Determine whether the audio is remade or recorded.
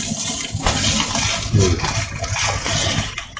recorded